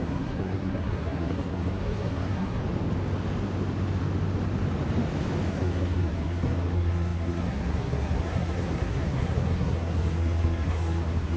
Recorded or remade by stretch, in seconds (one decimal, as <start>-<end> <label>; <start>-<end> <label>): 0.0-2.6 remade; 2.6-5.5 recorded; 5.5-11.4 remade